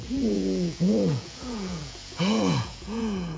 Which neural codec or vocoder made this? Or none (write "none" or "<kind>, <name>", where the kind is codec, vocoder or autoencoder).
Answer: vocoder, Vocos